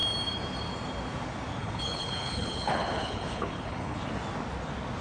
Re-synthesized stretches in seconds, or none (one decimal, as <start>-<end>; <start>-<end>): 1.6-4.0